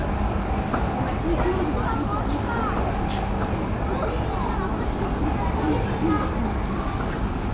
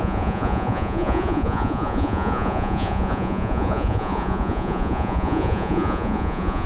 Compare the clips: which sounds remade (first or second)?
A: second